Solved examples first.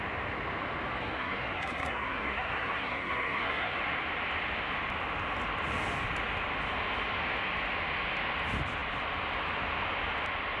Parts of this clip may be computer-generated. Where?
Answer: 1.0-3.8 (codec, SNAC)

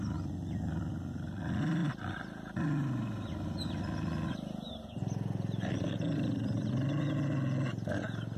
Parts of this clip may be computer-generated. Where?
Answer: none